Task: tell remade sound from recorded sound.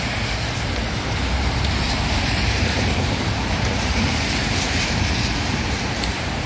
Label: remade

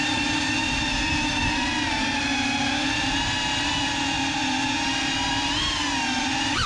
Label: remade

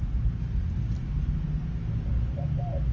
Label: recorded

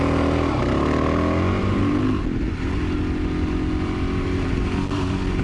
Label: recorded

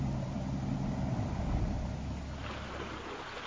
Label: recorded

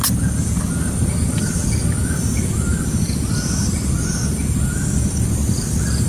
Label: recorded